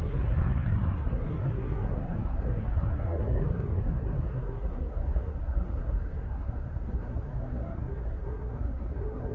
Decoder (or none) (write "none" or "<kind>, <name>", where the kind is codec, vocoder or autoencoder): codec, SNAC